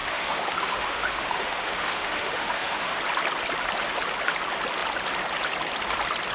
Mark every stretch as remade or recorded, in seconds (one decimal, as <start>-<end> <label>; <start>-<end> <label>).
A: 0.0-3.0 remade; 3.0-6.3 recorded